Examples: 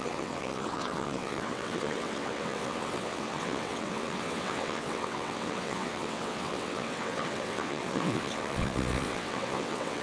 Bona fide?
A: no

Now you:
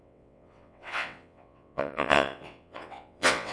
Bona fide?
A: no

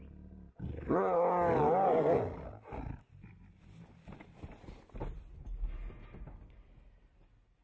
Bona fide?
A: yes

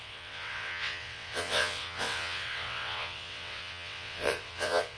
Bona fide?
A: no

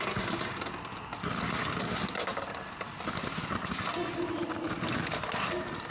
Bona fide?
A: yes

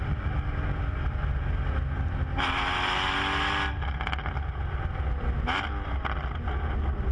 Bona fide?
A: yes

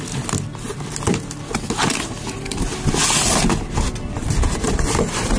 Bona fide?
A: yes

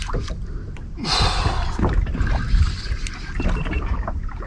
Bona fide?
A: yes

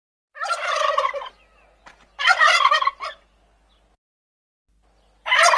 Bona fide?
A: yes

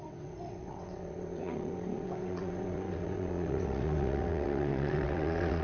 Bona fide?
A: no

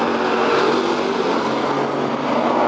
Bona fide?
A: yes